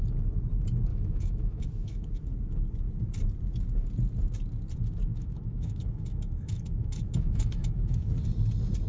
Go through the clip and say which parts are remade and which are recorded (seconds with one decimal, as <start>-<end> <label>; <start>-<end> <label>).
0.0-0.9 recorded; 0.9-2.3 remade; 2.3-5.1 recorded; 5.1-8.1 remade; 8.1-8.9 recorded